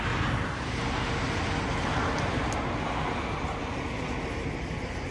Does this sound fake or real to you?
real